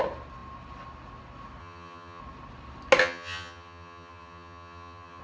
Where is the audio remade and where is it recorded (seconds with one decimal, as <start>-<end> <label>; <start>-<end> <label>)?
0.0-1.6 recorded; 1.6-2.2 remade; 2.2-3.0 recorded; 3.0-5.2 remade